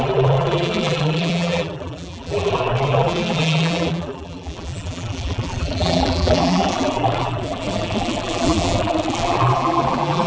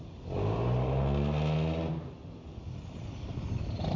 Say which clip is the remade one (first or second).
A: first